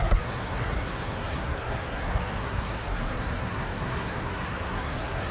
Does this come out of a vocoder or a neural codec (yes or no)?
yes